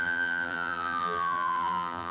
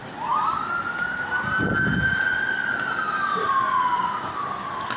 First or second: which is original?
second